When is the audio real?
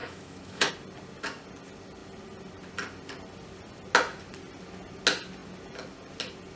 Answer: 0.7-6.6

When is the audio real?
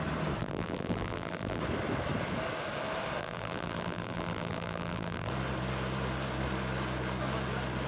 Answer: 0.0-0.4; 1.6-3.2; 5.3-7.9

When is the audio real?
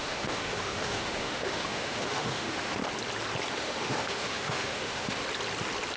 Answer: 2.8-3.5; 5.2-6.0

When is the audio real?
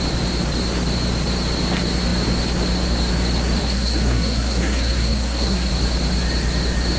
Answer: 0.0-3.6; 5.7-7.0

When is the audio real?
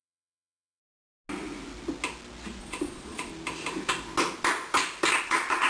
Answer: 0.8-2.6; 3.3-5.2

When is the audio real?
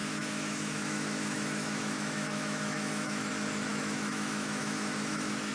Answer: 3.3-3.7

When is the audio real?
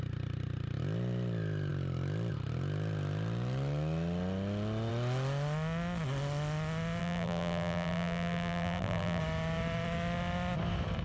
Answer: 0.0-7.0; 9.2-11.0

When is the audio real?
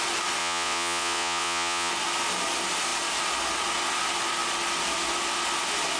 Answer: 0.0-0.4; 1.9-6.0